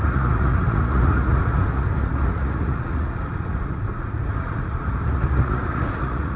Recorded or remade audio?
remade